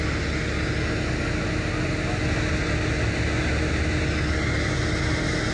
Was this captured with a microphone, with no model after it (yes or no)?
yes